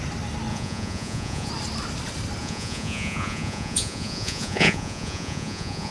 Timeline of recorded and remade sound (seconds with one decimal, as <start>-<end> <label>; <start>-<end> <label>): 0.0-0.5 recorded; 0.5-1.5 remade; 1.5-2.4 recorded; 2.4-5.9 remade